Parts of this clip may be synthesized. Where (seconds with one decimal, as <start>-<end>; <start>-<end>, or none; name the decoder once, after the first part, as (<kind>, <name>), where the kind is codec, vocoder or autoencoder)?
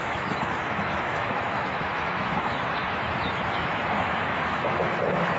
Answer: 0.0-5.4 (autoencoder, DAC-VAE)